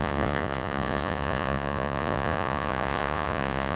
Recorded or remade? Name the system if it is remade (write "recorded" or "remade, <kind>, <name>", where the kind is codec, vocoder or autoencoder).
remade, vocoder, Vocos